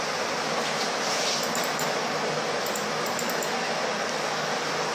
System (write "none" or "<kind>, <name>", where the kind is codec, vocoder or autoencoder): none